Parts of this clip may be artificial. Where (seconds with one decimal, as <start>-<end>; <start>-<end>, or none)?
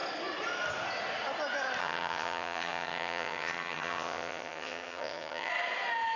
1.8-5.5